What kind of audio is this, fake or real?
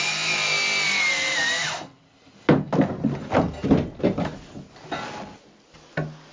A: real